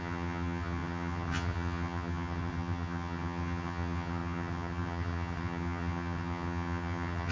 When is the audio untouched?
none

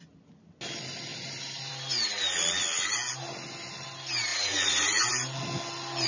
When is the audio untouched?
0.0-4.3; 5.1-6.1

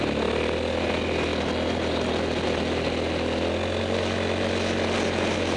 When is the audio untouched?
0.0-5.6

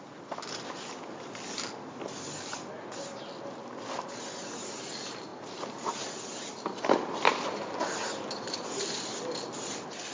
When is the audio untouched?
0.0-10.1

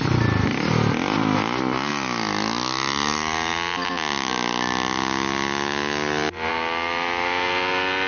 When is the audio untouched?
0.0-8.1